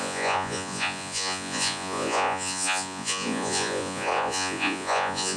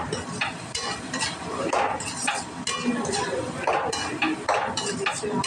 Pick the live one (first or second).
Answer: second